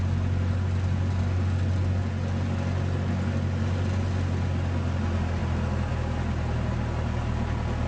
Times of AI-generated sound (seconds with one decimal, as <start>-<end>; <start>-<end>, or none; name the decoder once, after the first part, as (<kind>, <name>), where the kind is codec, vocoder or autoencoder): none

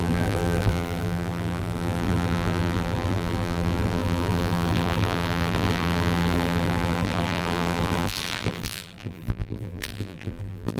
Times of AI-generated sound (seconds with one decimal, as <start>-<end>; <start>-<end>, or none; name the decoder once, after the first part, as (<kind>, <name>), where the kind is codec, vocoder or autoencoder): 0.0-10.8 (vocoder, BigVGAN v2)

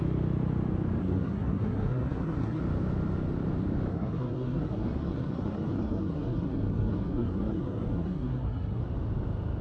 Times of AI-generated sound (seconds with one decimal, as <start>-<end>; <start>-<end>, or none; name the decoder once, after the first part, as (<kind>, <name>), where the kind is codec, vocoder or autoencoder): 1.0-2.6 (codec, SNAC); 3.9-8.8